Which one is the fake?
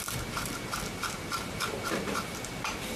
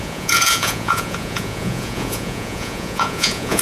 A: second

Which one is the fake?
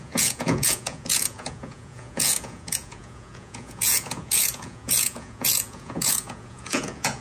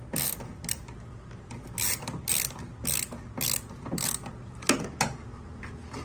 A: first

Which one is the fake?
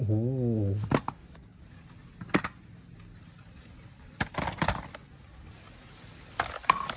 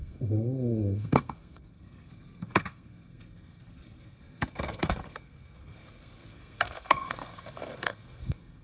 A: second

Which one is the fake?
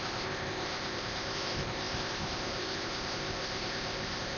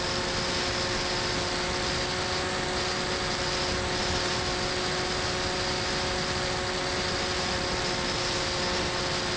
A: first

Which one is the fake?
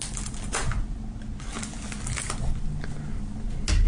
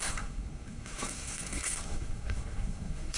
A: second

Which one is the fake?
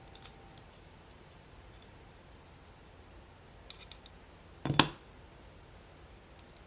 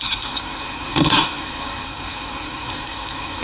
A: second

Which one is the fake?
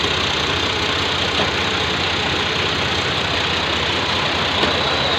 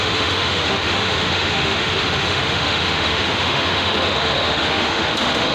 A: second